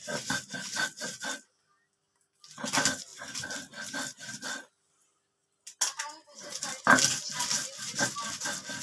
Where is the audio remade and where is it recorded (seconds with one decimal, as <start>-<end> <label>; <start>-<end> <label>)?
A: 0.0-8.8 recorded